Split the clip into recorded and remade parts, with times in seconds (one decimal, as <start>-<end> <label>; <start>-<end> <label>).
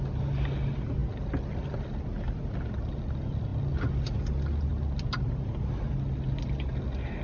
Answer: 0.0-7.2 recorded